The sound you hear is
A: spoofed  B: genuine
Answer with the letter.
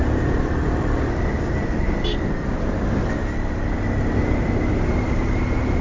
B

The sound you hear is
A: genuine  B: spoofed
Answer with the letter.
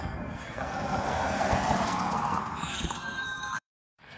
B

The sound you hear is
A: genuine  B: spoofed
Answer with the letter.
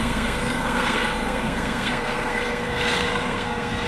B